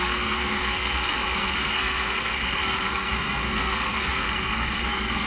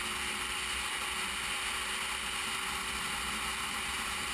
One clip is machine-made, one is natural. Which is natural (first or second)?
second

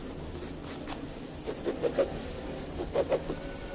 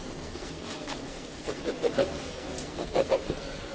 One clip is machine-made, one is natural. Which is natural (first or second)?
first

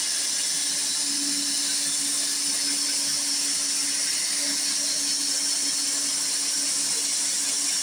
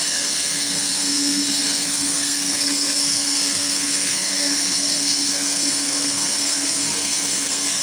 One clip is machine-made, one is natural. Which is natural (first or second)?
first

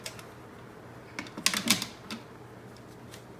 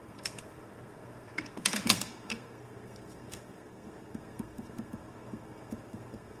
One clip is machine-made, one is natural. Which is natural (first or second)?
first